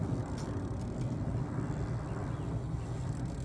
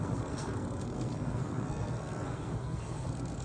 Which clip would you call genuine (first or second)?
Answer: first